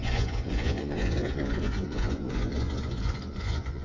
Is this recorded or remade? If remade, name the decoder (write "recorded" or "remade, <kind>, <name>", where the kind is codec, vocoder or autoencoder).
remade, vocoder, Vocos